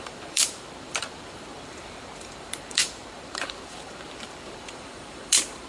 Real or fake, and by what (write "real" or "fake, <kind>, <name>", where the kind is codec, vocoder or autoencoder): fake, vocoder, BigVGAN v2